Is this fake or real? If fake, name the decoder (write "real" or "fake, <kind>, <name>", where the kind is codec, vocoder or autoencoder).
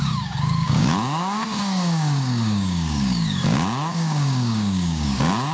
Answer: fake, codec, DAC